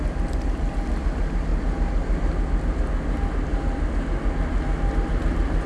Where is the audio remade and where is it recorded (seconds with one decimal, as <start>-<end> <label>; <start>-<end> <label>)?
0.0-5.7 recorded

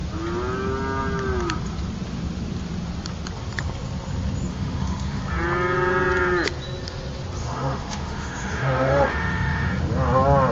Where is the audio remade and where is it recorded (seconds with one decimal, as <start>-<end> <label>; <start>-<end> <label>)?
0.0-4.5 recorded; 4.5-5.2 remade; 5.2-7.4 recorded; 7.4-9.7 remade; 9.7-10.5 recorded